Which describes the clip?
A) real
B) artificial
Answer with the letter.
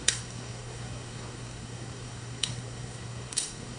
B